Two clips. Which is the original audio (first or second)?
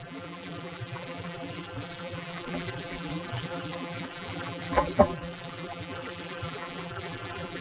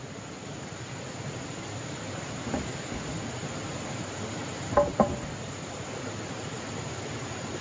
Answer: second